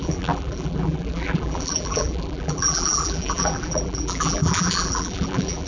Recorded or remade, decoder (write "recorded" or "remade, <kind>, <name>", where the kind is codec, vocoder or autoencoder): remade, vocoder, BigVGAN v2